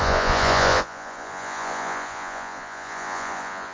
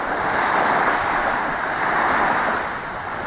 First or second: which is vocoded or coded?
first